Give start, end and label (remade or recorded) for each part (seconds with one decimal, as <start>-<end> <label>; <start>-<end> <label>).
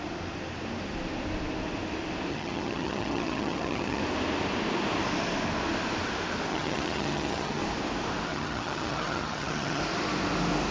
0.0-2.3 recorded; 2.3-4.0 remade; 4.0-6.5 recorded; 6.5-7.6 remade; 7.6-8.3 recorded; 8.3-9.8 remade; 9.8-10.7 recorded